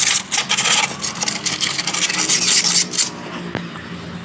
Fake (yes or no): no